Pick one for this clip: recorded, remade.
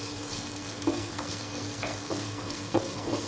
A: remade